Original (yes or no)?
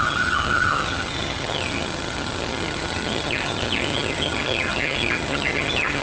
no